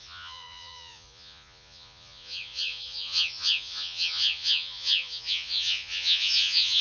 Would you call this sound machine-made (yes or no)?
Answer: yes